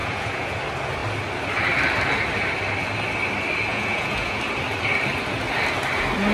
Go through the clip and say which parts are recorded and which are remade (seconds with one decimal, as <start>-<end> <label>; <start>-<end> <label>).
0.0-0.6 remade; 0.6-3.7 recorded; 3.7-4.4 remade; 4.4-6.3 recorded